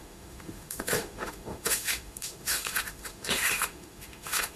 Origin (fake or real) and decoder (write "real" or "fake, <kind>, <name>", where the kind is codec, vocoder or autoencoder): fake, autoencoder, DAC-VAE